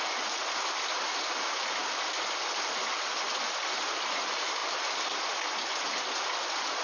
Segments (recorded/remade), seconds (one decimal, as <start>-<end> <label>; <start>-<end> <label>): 0.0-6.8 recorded